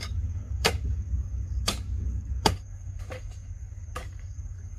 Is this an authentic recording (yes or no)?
no